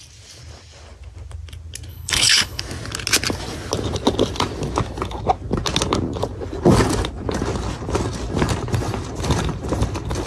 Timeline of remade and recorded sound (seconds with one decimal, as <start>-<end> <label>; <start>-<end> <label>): 0.0-1.9 recorded; 1.9-2.6 remade; 2.6-10.3 recorded